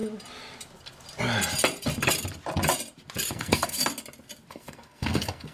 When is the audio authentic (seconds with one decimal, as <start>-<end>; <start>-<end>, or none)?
0.0-3.3; 3.8-4.5